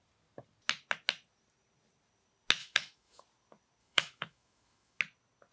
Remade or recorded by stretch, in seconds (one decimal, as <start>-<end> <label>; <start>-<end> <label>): 0.0-2.6 recorded; 2.6-3.2 remade; 3.2-3.8 recorded; 3.8-5.0 remade; 5.0-5.5 recorded